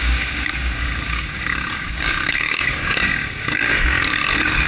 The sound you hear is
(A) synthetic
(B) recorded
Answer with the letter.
A